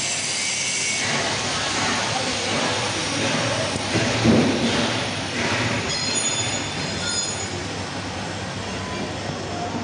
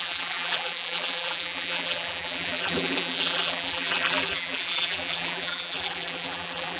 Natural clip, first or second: first